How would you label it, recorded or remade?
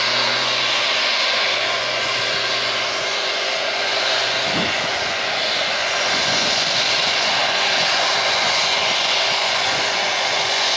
remade